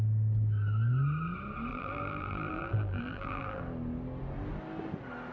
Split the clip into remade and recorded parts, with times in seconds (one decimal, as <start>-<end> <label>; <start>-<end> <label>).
0.0-1.7 recorded; 1.7-3.6 remade; 3.6-5.3 recorded